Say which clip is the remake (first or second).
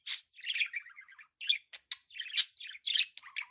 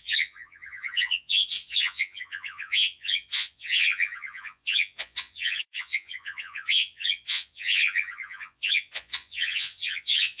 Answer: second